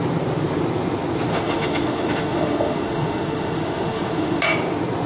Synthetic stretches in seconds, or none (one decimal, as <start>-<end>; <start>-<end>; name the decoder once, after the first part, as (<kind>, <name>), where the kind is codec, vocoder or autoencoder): 1.3-4.4 (autoencoder, DAC-VAE)